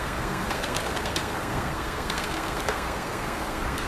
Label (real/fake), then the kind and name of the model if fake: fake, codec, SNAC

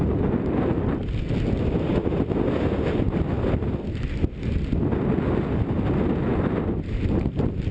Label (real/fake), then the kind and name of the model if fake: real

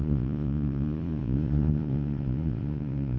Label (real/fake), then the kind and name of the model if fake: fake, vocoder, Vocos